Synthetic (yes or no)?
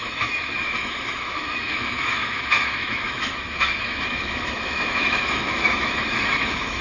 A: yes